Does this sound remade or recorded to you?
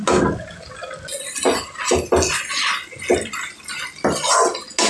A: recorded